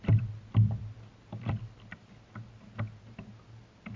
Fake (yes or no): no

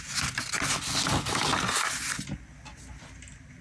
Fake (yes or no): no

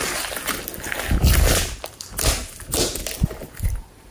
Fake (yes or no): no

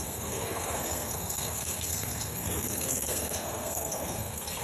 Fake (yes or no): yes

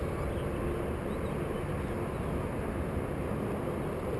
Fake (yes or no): no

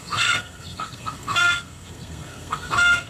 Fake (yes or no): yes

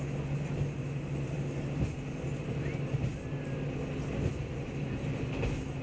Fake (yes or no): no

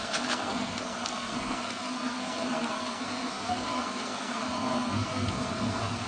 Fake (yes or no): yes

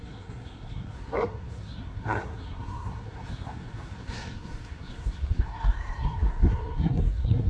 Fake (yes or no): yes